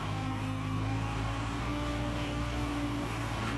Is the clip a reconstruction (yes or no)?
yes